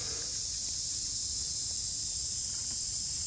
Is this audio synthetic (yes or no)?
no